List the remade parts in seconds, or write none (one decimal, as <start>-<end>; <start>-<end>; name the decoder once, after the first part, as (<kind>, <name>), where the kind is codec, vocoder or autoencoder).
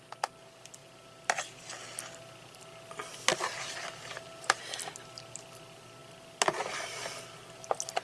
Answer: none